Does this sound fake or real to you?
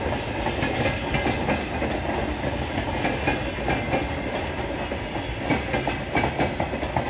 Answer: real